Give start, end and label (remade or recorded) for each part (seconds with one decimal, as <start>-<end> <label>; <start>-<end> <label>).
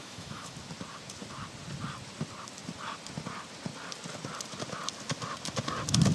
0.0-0.5 remade; 0.5-6.1 recorded